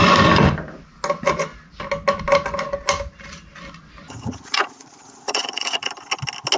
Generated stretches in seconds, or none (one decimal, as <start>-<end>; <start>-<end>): 4.2-5.9